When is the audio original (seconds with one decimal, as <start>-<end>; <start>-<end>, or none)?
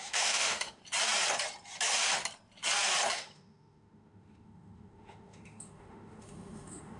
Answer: 0.8-3.1